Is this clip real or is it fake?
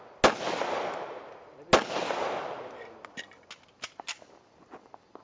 real